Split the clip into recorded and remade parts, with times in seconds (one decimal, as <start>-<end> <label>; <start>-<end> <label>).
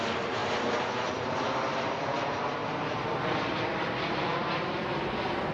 0.0-5.5 recorded